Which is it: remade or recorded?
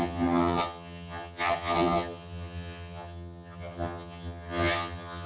remade